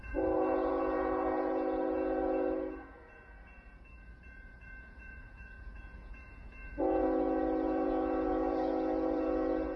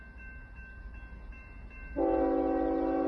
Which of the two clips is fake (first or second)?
first